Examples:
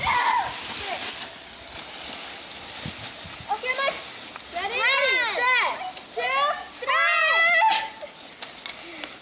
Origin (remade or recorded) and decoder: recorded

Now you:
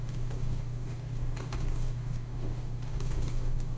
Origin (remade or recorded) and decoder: remade, codec, DAC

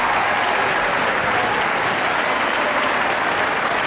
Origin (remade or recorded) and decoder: recorded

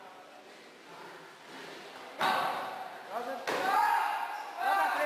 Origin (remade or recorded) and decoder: recorded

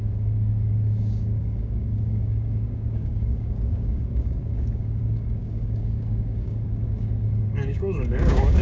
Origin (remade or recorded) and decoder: remade, codec, DAC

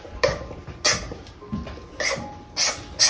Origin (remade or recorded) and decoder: recorded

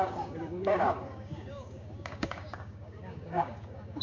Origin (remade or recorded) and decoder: remade, codec, DAC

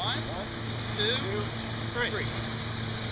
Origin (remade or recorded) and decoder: recorded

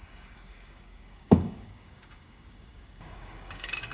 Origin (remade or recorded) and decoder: remade, codec, DAC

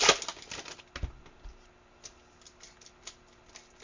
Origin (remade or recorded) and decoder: recorded